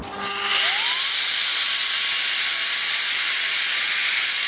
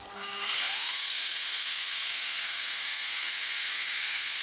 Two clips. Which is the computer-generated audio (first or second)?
second